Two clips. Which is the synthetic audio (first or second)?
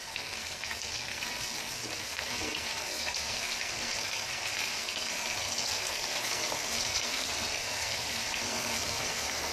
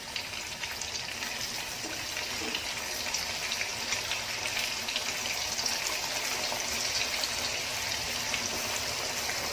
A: first